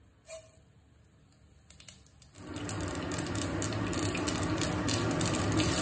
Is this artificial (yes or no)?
no